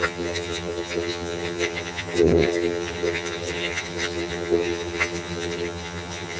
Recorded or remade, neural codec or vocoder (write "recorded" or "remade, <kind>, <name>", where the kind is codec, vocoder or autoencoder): remade, vocoder, HiFi-GAN